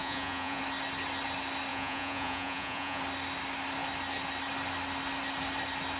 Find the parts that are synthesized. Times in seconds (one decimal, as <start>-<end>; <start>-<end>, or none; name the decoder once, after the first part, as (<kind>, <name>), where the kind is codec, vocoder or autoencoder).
0.0-0.6 (vocoder, Vocos); 1.7-3.0

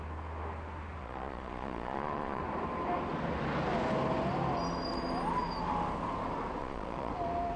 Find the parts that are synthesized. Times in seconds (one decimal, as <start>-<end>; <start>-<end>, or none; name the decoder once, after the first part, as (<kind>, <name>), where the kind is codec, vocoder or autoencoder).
1.0-2.4 (vocoder, Vocos); 6.6-7.1

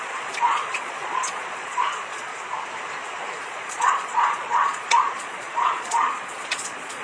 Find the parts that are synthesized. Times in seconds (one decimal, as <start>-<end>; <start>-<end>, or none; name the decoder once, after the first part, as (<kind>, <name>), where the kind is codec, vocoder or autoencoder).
0.0-2.3 (vocoder, Vocos); 3.4-7.0

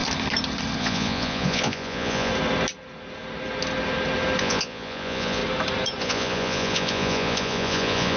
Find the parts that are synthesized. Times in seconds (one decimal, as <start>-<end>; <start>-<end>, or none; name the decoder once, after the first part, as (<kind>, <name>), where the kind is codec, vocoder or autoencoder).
0.8-2.3 (vocoder, Vocos); 4.4-5.4; 6.0-8.2

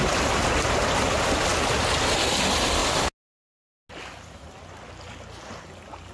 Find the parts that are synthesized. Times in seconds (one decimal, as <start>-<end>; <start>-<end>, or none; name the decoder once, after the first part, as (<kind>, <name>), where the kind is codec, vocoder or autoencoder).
none

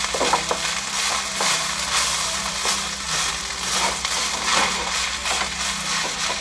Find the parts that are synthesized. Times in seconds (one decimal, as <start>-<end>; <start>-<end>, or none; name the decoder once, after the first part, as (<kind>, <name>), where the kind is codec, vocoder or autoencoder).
none